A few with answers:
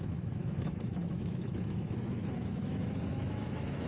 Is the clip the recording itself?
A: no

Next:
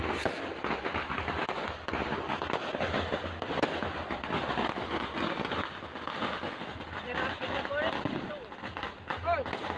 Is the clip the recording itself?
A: yes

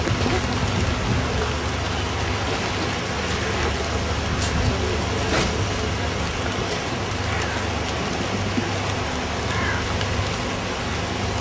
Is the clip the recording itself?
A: yes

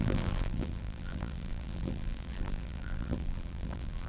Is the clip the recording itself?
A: no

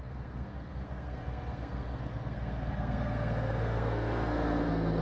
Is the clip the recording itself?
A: no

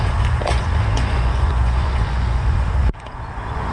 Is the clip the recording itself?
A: no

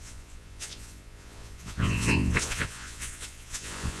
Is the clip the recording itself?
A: no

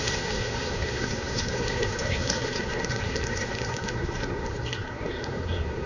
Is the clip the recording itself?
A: no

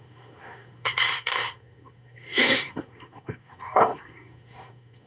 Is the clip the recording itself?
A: no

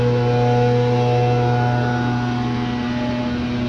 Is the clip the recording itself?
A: yes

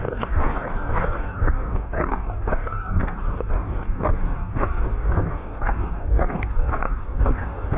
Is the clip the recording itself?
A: no